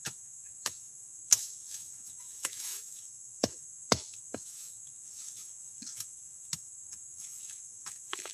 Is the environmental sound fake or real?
fake